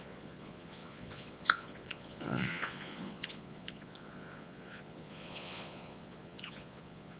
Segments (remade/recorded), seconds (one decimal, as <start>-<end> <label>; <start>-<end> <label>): 0.0-7.2 remade

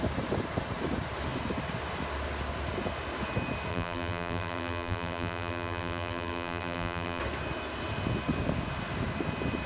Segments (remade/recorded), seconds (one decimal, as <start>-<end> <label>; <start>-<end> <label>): 0.0-3.7 recorded; 3.7-7.2 remade; 7.2-9.7 recorded

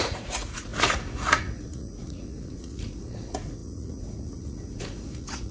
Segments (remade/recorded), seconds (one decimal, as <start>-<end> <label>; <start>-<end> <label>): 0.0-5.5 remade

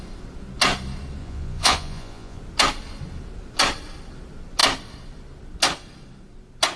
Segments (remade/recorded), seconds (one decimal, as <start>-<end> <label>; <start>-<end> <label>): 0.0-1.2 recorded; 1.2-2.4 remade; 2.4-6.8 recorded

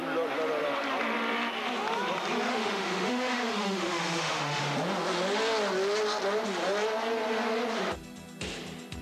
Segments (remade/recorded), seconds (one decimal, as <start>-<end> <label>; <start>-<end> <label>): 0.0-2.5 recorded; 2.5-4.6 remade; 4.6-9.0 recorded

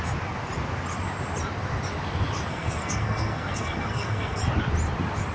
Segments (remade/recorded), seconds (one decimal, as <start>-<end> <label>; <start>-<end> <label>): 0.0-2.5 recorded; 2.5-4.4 remade; 4.4-5.3 recorded

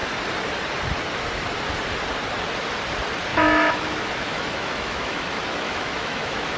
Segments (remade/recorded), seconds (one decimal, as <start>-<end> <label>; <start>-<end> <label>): 0.0-3.3 recorded; 3.3-6.6 remade

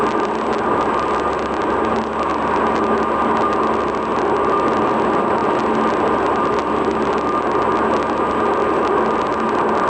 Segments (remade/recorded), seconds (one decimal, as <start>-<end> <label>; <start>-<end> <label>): 0.0-4.1 recorded; 4.1-4.9 remade; 4.9-9.9 recorded